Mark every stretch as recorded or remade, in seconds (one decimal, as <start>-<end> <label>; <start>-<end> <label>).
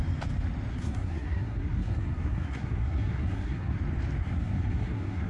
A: 0.0-0.7 recorded; 0.7-3.8 remade; 3.8-4.2 recorded; 4.2-5.3 remade